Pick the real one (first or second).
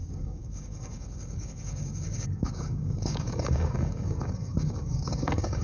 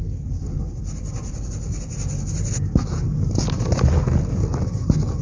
second